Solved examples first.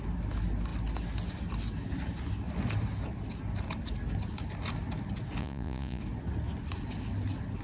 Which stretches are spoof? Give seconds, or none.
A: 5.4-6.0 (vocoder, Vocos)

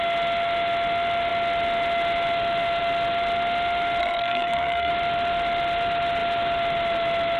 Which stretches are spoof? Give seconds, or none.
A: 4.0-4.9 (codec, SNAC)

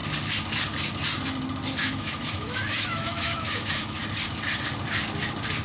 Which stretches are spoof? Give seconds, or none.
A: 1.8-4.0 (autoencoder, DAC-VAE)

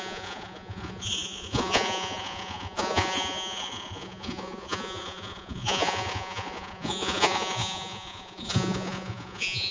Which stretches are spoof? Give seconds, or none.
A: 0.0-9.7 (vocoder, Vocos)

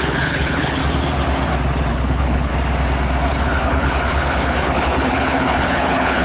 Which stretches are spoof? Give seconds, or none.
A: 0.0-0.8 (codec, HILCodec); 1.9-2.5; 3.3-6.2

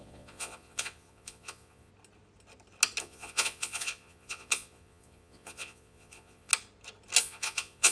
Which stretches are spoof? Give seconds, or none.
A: 0.0-1.9 (vocoder, Vocos); 3.0-6.5; 7.2-7.9

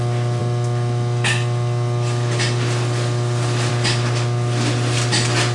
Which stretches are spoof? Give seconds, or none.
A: none